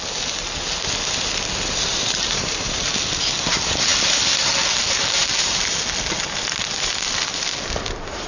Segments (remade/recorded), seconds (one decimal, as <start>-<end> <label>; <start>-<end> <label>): 0.0-1.9 recorded; 1.9-2.9 remade; 2.9-8.3 recorded